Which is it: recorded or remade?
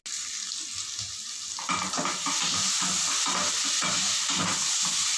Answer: recorded